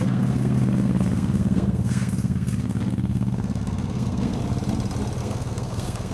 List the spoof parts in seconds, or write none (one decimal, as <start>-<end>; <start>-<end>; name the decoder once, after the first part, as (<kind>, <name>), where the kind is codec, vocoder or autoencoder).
0.0-4.4 (codec, SNAC); 5.2-6.1